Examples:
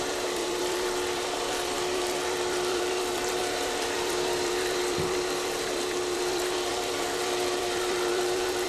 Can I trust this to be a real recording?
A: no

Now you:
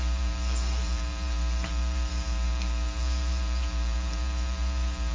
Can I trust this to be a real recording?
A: no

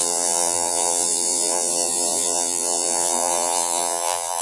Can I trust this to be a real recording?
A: no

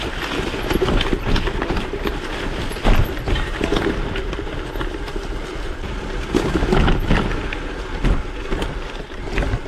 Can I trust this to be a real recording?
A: yes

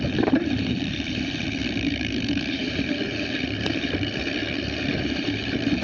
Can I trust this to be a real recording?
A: no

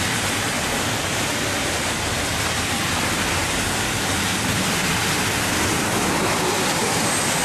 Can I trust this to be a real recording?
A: no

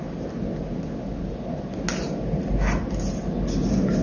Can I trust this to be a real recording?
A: yes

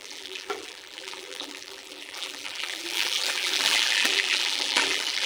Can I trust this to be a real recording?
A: no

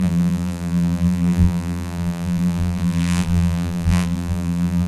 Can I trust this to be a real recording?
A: no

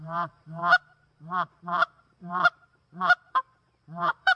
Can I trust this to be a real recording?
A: no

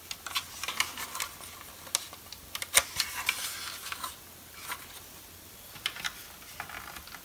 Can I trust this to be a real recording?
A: yes